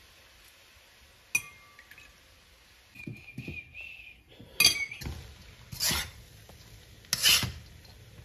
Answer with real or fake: real